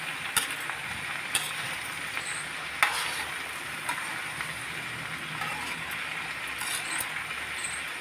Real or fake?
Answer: real